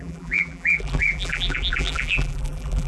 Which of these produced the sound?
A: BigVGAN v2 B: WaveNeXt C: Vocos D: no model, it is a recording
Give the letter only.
A